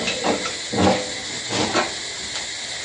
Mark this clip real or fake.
real